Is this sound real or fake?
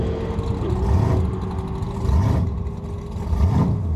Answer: real